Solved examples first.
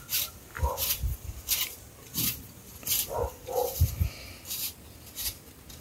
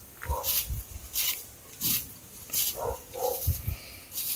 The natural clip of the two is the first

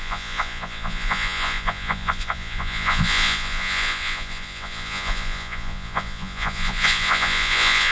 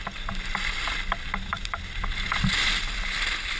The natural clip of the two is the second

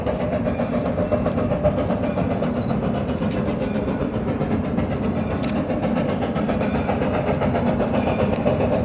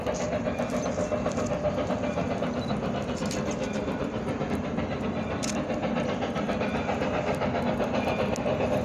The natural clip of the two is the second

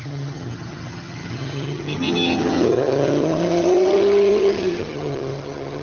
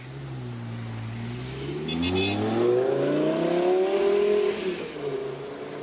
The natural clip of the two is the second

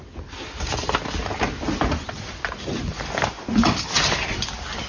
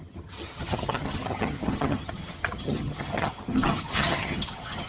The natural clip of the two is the first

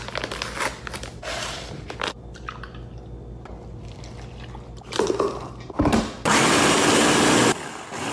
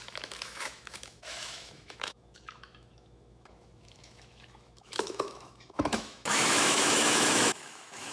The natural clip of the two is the first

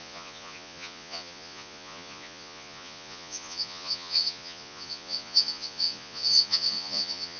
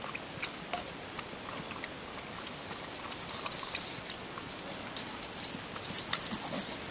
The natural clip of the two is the second